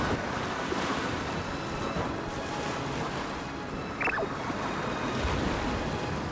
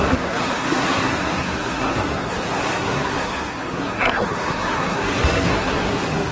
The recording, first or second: first